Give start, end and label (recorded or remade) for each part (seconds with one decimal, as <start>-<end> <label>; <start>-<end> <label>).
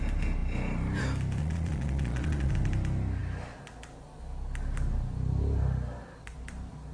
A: 0.0-1.4 recorded; 1.4-2.5 remade; 2.5-6.9 recorded